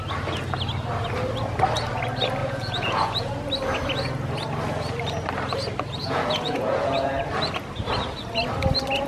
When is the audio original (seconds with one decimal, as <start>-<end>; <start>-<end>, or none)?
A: 0.0-2.4; 3.3-6.0; 7.1-9.1